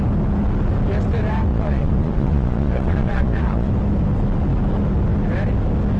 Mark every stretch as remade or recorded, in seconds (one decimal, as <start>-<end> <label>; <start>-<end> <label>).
0.0-1.5 recorded; 1.5-3.7 remade; 3.7-6.0 recorded